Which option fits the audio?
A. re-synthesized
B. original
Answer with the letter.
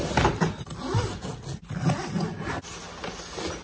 B